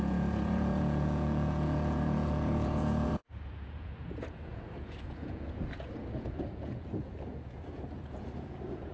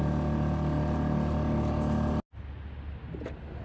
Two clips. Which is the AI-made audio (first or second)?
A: first